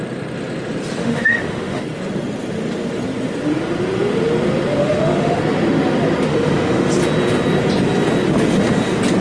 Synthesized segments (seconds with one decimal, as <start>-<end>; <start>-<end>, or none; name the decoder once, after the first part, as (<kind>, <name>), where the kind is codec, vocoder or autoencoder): 1.0-1.8 (autoencoder, DAC-VAE); 4.8-5.4; 6.3-6.9